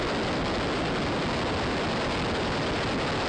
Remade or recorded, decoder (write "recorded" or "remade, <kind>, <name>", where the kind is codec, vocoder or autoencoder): recorded